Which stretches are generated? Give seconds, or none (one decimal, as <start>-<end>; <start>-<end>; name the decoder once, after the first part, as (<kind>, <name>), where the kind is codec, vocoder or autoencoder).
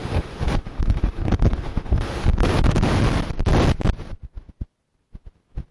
0.0-2.9 (autoencoder, DAC-VAE)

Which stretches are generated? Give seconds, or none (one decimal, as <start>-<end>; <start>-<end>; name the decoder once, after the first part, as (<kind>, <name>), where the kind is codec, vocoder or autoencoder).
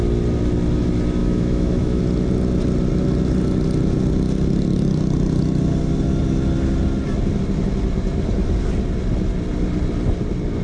1.2-2.0 (autoencoder, DAC-VAE)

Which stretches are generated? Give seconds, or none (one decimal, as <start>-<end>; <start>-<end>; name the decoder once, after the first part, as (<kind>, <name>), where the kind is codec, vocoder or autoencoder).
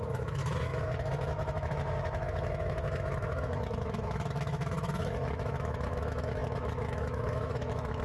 0.0-8.0 (autoencoder, DAC-VAE)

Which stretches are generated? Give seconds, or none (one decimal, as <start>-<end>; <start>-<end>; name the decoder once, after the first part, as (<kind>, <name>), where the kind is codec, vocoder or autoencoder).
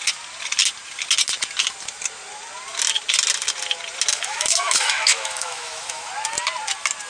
4.1-6.1 (autoencoder, DAC-VAE)